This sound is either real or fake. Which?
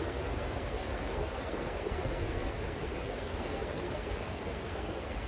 fake